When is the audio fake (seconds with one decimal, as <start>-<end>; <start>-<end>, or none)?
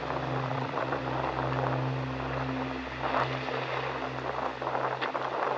0.5-1.0